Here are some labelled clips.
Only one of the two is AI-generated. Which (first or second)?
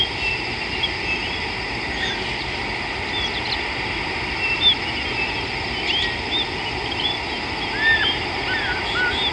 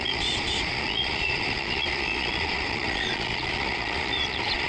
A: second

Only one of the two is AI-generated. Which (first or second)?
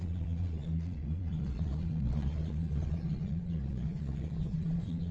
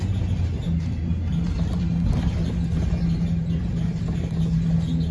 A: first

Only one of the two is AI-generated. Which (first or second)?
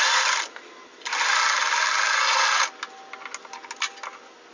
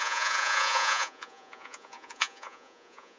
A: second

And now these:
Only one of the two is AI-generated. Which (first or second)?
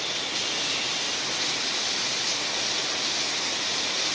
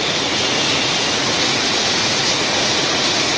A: second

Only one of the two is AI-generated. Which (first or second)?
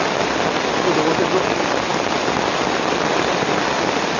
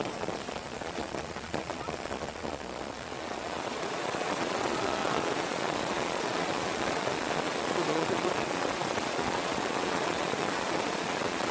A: second